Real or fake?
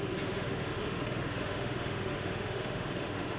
fake